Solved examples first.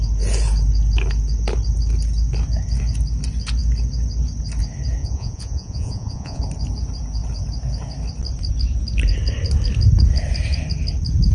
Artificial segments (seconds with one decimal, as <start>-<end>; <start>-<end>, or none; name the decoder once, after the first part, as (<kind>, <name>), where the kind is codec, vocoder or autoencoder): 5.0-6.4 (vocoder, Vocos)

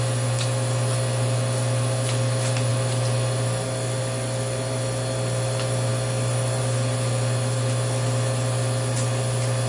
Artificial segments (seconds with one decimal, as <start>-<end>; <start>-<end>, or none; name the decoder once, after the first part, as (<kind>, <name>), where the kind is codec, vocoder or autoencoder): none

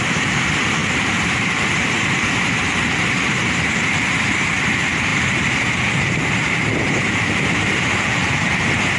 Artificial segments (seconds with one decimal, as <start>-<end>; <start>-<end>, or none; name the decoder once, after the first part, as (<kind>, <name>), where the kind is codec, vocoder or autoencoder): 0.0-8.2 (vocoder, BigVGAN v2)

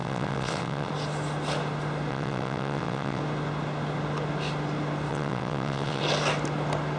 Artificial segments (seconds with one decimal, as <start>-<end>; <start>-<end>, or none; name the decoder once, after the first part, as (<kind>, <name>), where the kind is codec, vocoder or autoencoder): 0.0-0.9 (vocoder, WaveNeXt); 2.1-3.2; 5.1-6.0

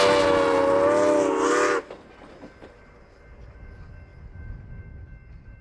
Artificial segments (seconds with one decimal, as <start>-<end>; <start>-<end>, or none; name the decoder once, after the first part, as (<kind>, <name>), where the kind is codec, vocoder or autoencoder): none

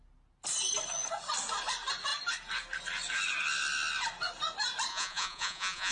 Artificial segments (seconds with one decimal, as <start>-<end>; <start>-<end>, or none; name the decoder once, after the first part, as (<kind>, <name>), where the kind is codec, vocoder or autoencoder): 4.9-5.9 (vocoder, Vocos)

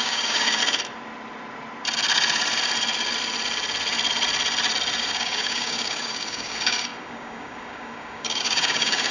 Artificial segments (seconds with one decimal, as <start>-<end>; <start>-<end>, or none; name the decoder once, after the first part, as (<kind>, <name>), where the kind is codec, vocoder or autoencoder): 0.0-0.6 (codec, DAC); 5.0-9.1